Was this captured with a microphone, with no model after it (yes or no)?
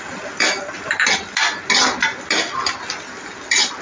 yes